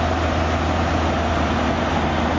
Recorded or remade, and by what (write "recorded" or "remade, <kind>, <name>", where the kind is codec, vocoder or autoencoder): recorded